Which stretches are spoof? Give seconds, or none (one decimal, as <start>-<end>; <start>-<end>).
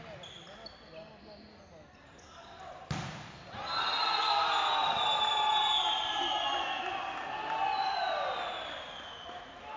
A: none